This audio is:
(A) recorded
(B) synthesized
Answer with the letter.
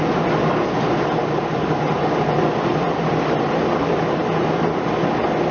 A